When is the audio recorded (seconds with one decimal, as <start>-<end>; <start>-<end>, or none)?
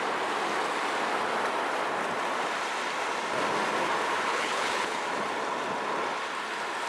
0.0-4.3; 5.0-6.9